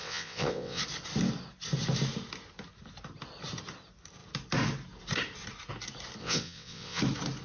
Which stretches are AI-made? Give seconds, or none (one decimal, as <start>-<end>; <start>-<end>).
0.0-0.8; 6.2-7.0